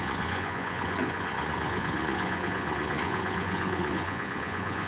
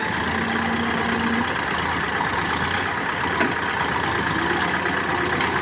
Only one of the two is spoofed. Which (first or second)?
first